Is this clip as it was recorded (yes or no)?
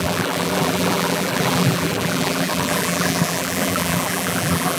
no